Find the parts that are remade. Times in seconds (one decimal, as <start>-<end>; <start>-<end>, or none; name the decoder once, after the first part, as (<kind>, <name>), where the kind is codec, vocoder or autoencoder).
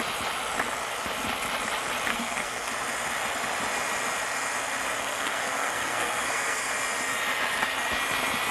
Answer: 2.1-2.7 (codec, SNAC); 5.0-6.7